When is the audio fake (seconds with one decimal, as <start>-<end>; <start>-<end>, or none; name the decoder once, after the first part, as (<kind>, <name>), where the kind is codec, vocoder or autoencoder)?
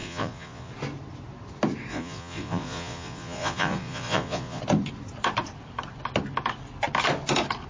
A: 0.0-0.7 (vocoder, Vocos); 1.9-4.6